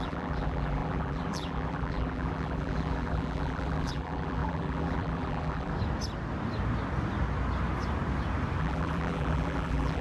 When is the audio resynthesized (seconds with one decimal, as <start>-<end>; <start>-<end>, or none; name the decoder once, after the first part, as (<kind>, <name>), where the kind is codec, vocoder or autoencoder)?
0.0-5.7 (vocoder, BigVGAN v2); 8.6-10.0